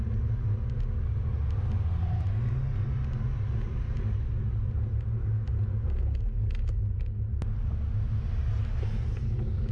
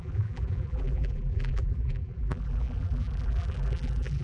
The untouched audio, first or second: first